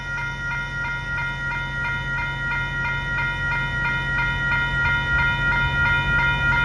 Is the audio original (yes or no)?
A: yes